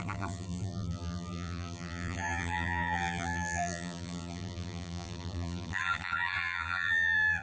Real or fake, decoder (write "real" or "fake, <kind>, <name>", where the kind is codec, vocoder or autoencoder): fake, vocoder, BigVGAN v2